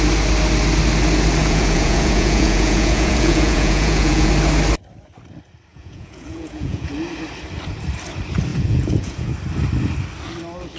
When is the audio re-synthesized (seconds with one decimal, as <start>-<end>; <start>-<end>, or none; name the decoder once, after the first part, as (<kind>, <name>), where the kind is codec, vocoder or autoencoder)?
1.4-4.3 (vocoder, Vocos); 5.7-6.9; 8.5-9.3